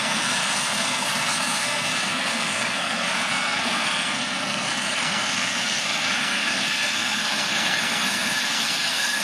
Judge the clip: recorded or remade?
remade